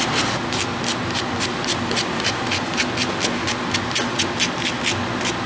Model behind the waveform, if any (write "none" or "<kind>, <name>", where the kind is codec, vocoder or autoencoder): none